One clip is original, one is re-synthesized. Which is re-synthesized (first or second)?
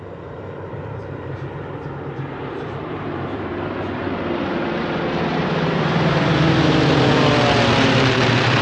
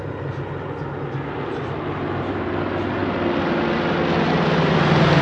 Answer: first